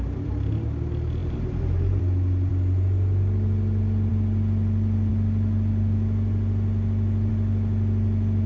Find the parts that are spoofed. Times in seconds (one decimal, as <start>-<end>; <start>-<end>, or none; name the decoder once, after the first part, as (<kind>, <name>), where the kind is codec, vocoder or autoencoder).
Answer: 1.2-2.0 (vocoder, BigVGAN v2)